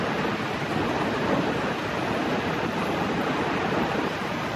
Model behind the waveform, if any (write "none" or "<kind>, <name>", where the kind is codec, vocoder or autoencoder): none